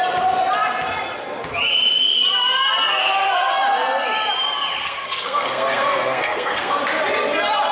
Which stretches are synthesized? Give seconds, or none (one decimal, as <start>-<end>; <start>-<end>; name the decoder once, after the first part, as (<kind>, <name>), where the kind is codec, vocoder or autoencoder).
3.0-3.5 (codec, SNAC); 4.8-6.8